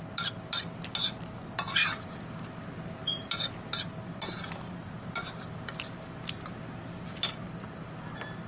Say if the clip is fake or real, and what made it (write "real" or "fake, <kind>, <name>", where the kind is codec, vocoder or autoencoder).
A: real